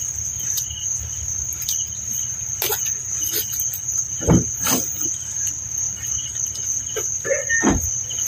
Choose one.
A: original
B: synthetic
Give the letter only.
A